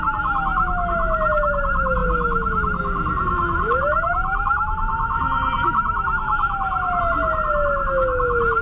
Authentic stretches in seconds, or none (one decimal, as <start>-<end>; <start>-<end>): 0.0-8.6